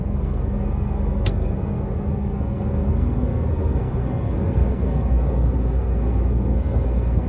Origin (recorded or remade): remade